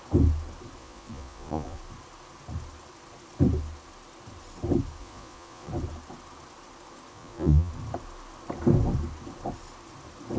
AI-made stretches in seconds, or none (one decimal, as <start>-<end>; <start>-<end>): 0.8-1.8; 5.0-5.7; 7.1-7.7